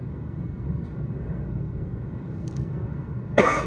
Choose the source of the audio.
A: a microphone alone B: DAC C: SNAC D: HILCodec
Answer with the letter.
C